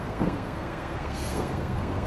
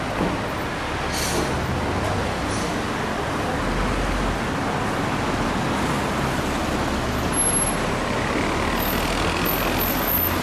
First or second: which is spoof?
first